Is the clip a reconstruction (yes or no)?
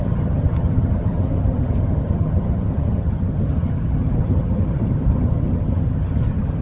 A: yes